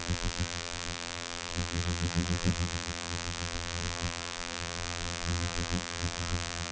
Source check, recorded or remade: remade